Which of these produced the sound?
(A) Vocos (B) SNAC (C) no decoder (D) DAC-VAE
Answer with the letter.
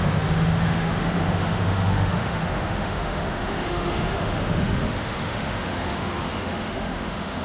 D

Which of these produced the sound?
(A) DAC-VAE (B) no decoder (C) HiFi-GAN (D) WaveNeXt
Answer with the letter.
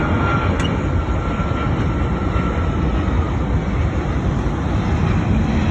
B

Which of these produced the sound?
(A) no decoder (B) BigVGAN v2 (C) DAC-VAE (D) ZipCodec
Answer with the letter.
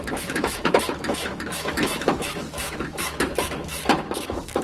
C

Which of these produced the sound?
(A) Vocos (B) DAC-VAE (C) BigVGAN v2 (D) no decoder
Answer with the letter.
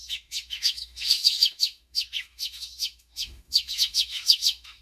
B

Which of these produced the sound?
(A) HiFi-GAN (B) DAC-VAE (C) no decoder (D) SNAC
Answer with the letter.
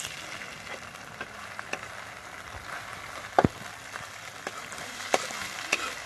C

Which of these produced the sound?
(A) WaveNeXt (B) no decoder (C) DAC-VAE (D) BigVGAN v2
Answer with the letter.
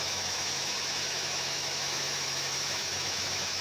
C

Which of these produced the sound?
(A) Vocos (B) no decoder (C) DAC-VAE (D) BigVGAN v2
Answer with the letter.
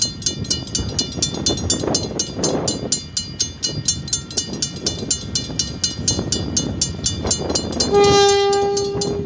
B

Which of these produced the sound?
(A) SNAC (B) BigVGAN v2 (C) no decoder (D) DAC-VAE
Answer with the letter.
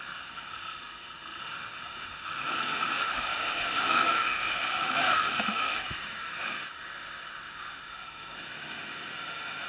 D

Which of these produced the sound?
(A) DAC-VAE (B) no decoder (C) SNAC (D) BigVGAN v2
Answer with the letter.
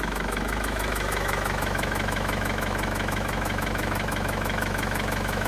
A